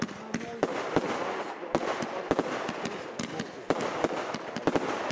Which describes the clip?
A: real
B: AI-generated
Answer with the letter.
A